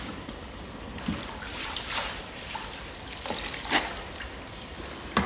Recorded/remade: recorded